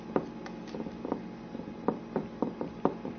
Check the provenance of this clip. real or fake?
real